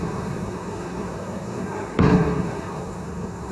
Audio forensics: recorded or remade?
remade